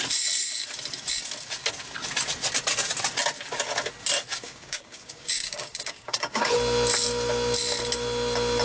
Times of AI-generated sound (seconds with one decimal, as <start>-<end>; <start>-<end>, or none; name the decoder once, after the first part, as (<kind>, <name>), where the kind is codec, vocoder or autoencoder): 4.3-6.5 (codec, DAC)